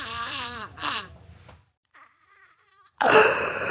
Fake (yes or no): yes